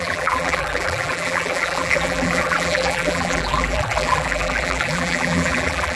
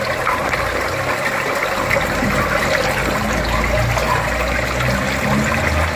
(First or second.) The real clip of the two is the second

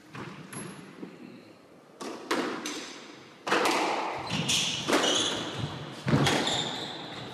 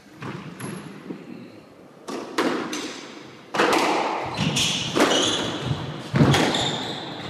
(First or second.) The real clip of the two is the first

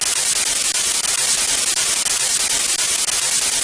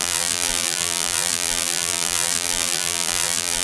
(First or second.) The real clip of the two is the first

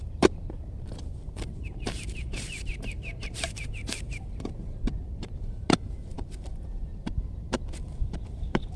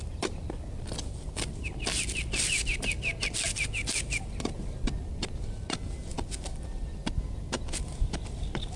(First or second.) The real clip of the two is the second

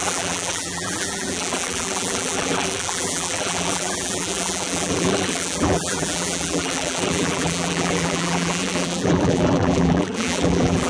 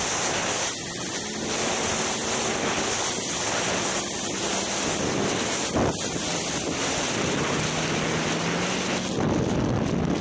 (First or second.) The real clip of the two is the second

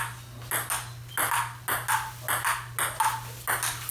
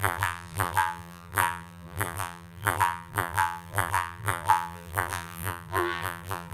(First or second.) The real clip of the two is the first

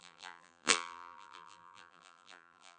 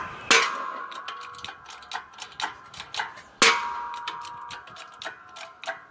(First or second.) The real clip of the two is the second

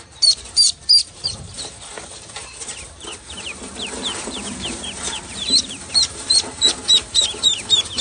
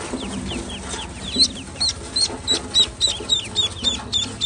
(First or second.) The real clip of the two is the second